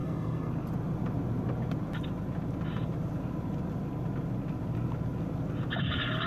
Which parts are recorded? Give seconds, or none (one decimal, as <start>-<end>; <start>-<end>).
0.5-6.3

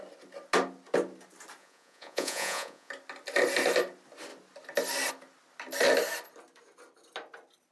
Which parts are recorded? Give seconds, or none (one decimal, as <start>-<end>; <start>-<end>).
0.0-1.6; 2.9-7.7

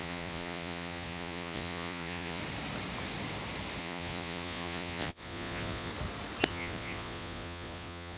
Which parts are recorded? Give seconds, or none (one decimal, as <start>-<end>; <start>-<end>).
2.4-3.8; 5.9-6.5

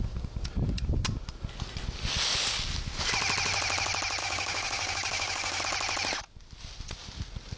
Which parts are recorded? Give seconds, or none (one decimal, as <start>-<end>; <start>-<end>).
0.0-4.2; 5.6-7.6

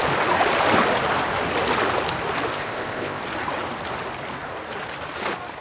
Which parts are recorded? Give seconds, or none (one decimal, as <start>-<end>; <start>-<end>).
0.0-2.5; 3.2-5.6

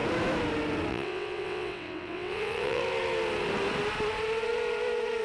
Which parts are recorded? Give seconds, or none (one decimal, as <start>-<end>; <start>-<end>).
0.0-0.9; 2.8-5.2

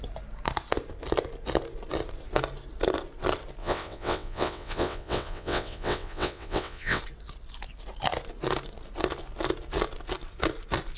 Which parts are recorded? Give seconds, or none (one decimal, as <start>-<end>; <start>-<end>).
0.0-3.6; 7.0-11.0

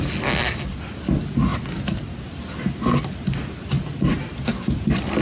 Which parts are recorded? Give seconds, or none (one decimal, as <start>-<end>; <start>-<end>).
0.0-5.2